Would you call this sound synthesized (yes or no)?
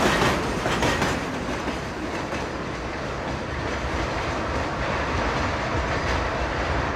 no